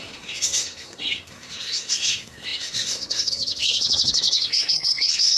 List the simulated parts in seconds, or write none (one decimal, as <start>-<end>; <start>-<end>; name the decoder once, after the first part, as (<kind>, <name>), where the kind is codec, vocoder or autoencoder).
0.0-5.4 (codec, SNAC)